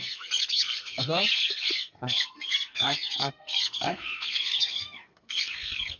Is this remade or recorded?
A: remade